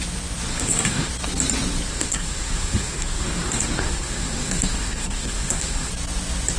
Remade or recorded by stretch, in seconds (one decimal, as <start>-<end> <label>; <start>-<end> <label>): 0.0-0.5 recorded; 0.5-1.1 remade; 1.1-1.9 recorded; 1.9-5.9 remade; 5.9-6.6 recorded